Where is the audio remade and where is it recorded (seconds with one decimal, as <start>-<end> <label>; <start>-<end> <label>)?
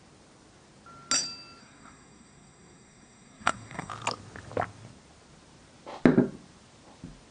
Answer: 0.0-1.6 recorded; 1.6-3.9 remade; 3.9-7.3 recorded